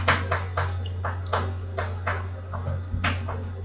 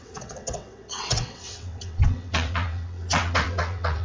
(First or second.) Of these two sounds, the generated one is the second